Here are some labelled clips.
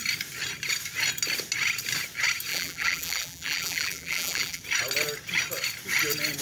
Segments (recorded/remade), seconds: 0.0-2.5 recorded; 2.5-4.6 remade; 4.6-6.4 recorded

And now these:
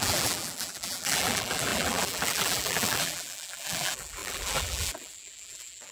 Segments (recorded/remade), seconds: 0.0-5.9 remade

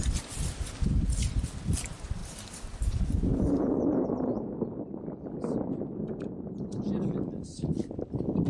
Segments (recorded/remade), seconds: 0.0-2.2 recorded; 2.2-2.8 remade; 2.8-3.3 recorded; 3.3-6.8 remade; 6.8-8.5 recorded